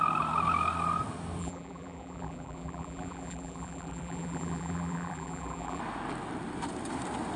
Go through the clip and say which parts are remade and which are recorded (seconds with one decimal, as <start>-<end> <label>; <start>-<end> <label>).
0.0-1.4 recorded; 1.4-5.8 remade; 5.8-7.4 recorded